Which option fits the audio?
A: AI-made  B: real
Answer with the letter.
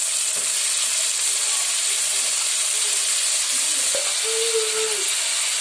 B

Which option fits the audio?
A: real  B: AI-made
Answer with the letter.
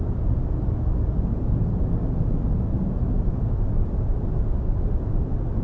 A